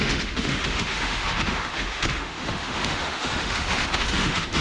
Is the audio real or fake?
fake